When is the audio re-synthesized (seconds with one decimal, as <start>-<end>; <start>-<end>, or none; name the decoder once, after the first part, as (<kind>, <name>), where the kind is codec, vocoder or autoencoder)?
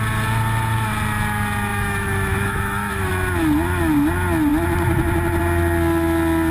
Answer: 1.7-3.1 (autoencoder, DAC-VAE)